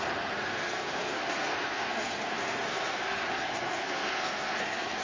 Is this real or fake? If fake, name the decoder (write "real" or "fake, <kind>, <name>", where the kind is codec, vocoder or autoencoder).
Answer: fake, codec, SNAC